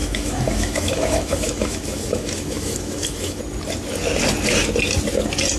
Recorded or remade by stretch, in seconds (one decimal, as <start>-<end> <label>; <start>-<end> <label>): 0.0-3.4 remade; 3.4-5.6 recorded